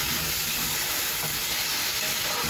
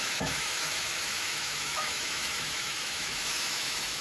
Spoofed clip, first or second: second